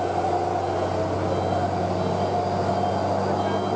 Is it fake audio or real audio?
real